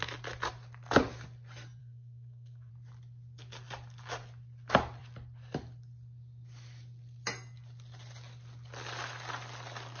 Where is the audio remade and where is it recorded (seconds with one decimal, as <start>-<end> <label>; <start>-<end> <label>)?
0.0-1.8 recorded; 1.8-2.7 remade; 2.7-10.0 recorded